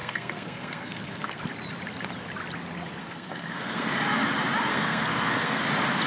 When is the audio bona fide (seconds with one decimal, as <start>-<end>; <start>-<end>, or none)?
1.4-3.0; 3.9-4.7; 5.6-6.1